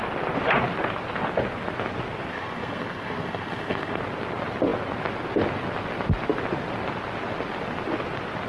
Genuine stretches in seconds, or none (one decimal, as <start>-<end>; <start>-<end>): 0.0-2.3; 4.0-8.5